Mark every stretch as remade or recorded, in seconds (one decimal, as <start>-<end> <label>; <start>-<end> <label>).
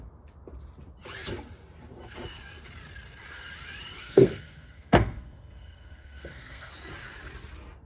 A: 0.0-4.0 recorded; 4.0-6.7 remade; 6.7-7.9 recorded